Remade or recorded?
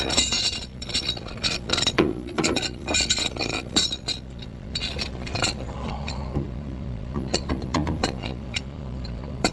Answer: remade